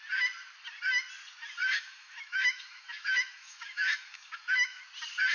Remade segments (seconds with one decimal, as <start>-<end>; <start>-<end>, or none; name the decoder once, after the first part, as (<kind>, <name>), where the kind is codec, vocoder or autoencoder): 1.6-4.8 (autoencoder, DAC-VAE)